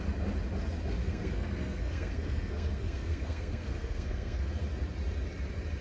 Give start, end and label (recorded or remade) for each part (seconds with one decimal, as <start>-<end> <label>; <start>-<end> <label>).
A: 0.0-1.0 recorded; 1.0-4.5 remade; 4.5-5.8 recorded